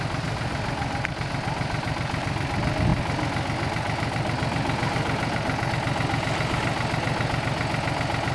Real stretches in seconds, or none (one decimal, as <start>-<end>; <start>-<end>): 0.0-8.3